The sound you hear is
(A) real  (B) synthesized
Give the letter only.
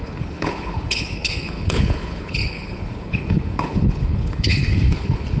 B